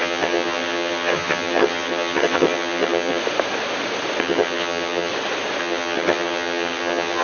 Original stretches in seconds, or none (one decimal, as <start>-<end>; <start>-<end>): 3.2-4.2; 5.1-5.6